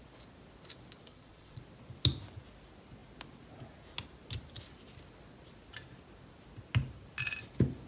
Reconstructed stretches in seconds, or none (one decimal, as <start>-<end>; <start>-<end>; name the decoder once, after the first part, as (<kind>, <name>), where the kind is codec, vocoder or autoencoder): 1.1-1.6 (vocoder, Vocos)